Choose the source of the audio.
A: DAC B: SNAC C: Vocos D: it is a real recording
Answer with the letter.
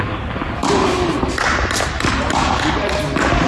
D